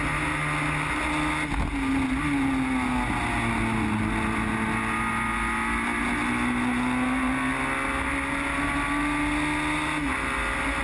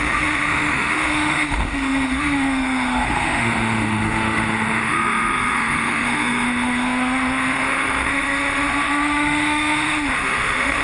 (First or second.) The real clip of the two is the first